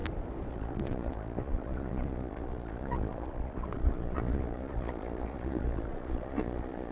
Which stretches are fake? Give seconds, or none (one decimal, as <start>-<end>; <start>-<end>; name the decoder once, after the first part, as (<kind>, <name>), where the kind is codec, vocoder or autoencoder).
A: 0.5-6.9 (vocoder, Vocos)